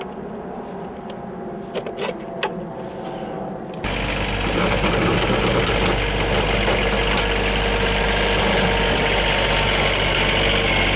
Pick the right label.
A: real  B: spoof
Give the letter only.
A